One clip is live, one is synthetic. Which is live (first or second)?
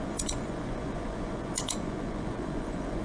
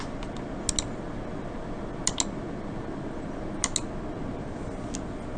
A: second